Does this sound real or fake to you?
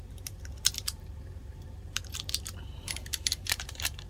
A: fake